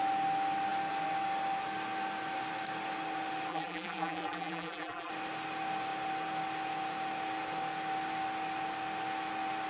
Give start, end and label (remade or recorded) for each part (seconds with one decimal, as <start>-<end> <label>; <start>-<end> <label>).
0.0-3.5 recorded; 3.5-5.1 remade; 5.1-9.7 recorded